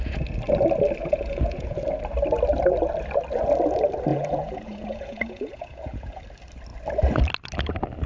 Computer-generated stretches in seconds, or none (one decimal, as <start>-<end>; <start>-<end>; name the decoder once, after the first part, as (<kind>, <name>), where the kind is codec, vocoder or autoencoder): 1.0-1.9 (vocoder, Vocos); 4.1-6.2